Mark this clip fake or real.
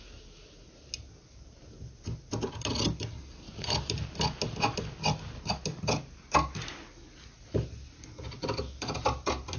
real